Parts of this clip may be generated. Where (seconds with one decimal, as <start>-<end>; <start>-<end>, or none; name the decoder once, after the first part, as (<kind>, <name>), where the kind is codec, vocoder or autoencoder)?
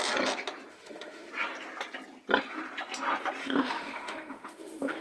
0.7-1.3 (autoencoder, DAC-VAE); 3.4-5.0